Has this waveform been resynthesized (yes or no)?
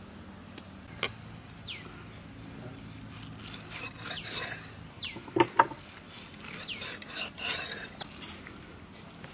no